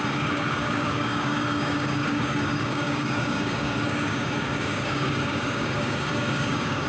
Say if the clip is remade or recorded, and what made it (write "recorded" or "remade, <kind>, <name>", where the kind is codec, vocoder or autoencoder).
remade, codec, DAC